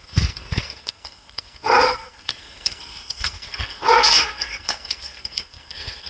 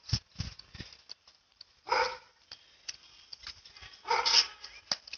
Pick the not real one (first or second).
first